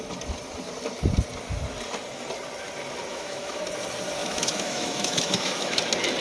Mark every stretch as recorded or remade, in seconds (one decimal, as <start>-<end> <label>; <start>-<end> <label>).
0.0-3.1 recorded; 3.1-3.6 remade; 3.6-4.2 recorded; 4.2-5.8 remade; 5.8-6.2 recorded